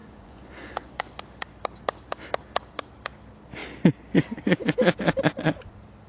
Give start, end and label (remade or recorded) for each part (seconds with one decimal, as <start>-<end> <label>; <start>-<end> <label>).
0.0-1.2 remade; 1.2-6.1 recorded